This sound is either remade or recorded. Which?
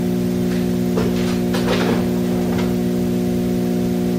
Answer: recorded